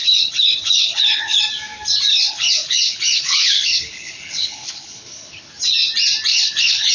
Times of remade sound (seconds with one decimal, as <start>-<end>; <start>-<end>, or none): 0.0-1.4; 2.1-5.5; 6.3-6.9